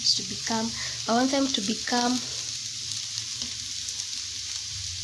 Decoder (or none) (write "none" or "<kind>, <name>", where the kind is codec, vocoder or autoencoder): none